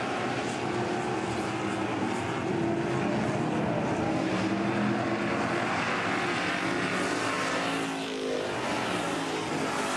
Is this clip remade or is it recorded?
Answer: recorded